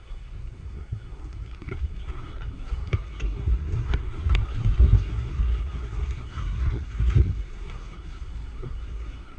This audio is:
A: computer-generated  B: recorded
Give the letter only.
A